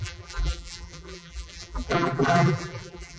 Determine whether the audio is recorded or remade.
remade